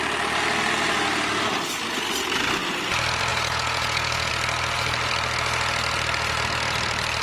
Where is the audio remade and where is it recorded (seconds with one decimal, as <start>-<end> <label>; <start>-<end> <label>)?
0.0-3.3 recorded; 3.3-4.3 remade; 4.3-7.2 recorded